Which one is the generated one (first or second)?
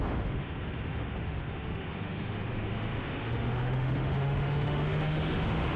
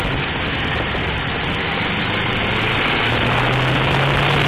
first